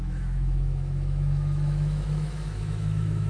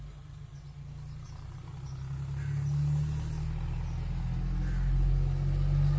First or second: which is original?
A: second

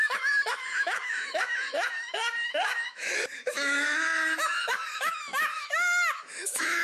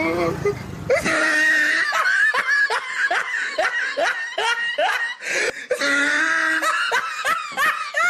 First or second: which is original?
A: second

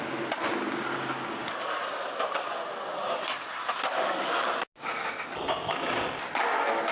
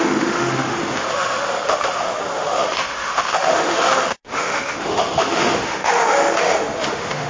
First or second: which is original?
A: first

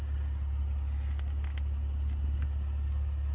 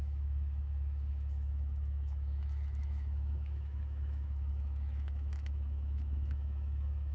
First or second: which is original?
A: first